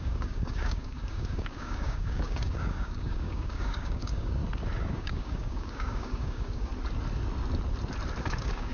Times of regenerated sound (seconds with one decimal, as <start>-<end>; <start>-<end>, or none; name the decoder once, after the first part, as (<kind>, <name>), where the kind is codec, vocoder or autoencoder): 0.0-4.4 (codec, DAC); 4.9-6.7; 8.2-8.7